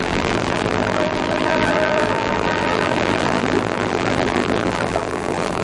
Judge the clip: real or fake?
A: fake